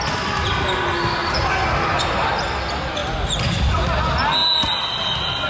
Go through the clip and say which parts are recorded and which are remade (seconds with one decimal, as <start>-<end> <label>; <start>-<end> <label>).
0.0-5.5 recorded